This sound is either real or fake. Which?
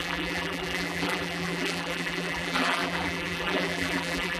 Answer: fake